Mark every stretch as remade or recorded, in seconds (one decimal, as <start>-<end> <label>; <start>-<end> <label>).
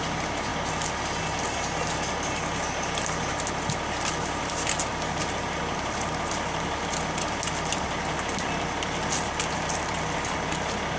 0.0-11.0 recorded